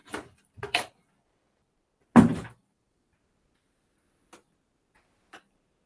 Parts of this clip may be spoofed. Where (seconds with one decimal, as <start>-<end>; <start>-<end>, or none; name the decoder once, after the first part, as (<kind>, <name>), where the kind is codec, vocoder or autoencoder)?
0.0-1.7 (vocoder, BigVGAN v2)